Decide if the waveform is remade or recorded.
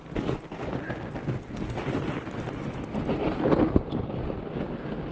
recorded